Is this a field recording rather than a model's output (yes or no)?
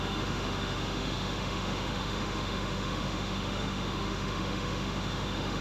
no